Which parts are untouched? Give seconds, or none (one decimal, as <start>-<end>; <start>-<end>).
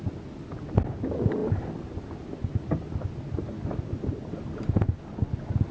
0.0-5.7